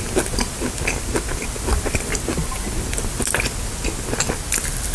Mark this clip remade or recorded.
recorded